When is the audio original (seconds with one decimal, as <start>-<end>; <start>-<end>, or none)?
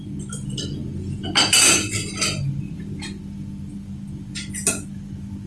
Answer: 0.0-5.5